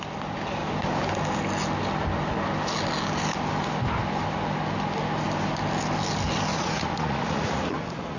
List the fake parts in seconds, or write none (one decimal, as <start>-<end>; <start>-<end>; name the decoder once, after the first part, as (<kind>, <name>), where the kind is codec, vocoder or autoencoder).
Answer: 6.5-8.2 (vocoder, Vocos)